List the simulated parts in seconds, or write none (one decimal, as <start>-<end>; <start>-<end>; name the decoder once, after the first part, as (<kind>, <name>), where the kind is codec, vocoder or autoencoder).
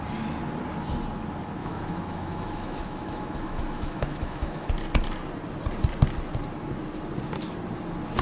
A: 1.6-4.7 (autoencoder, DAC-VAE)